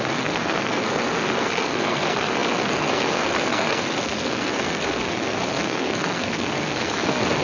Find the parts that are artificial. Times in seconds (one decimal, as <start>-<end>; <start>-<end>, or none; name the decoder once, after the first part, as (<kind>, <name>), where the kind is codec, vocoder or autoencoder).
0.0-7.4 (codec, SNAC)